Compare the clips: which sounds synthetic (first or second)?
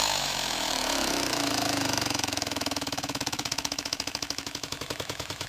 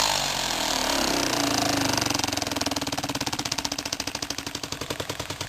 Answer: first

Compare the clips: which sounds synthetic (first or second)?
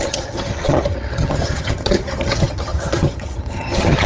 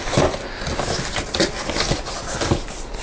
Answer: first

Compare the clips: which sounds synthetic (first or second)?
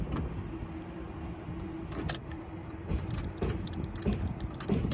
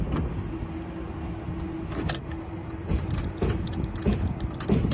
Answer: first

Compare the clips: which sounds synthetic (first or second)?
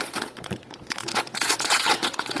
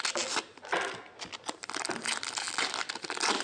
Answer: first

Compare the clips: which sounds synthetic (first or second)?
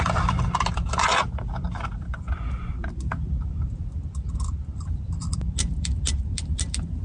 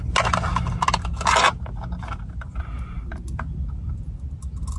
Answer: first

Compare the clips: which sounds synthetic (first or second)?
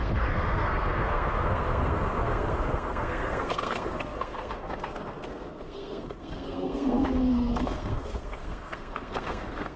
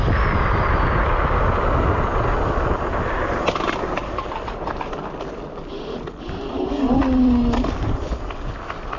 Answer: first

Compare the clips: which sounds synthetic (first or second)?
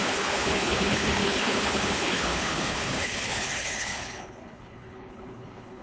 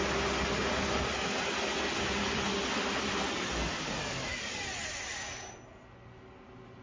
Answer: first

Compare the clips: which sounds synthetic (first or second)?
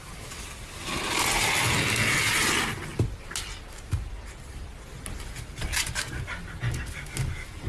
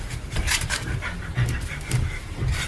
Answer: second